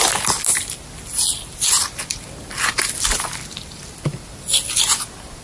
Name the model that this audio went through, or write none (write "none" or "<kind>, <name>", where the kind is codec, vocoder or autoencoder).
none